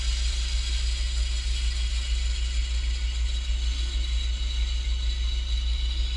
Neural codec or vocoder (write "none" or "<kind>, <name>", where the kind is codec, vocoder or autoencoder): none